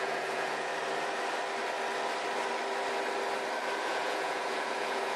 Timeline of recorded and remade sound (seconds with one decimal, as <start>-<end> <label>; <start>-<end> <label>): 0.0-0.7 remade; 0.7-3.8 recorded; 3.8-5.2 remade